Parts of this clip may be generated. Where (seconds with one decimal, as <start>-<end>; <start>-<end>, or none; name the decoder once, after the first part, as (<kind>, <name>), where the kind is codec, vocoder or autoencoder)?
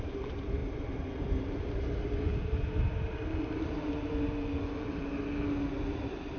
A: 0.0-2.3 (vocoder, BigVGAN v2); 5.9-6.4